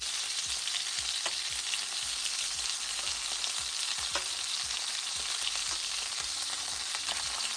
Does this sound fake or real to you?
real